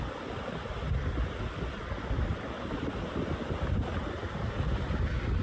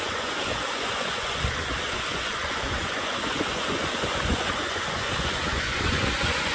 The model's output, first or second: second